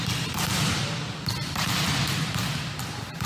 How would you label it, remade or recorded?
recorded